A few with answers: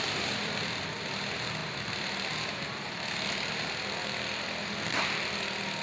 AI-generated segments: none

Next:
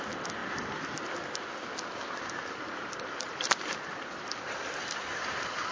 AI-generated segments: 2.0-5.7 (vocoder, BigVGAN v2)

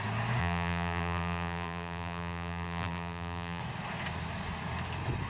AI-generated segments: 0.4-3.6 (vocoder, BigVGAN v2)

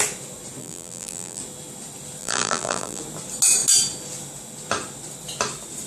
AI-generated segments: 0.6-1.4 (vocoder, BigVGAN v2); 2.2-3.0

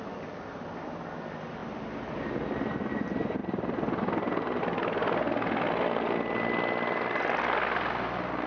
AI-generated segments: 3.4-4.6 (vocoder, BigVGAN v2)

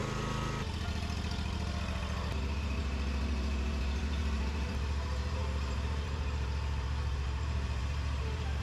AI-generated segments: 2.6-8.6 (vocoder, BigVGAN v2)

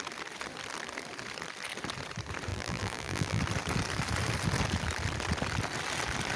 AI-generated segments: 2.5-3.4 (vocoder, BigVGAN v2)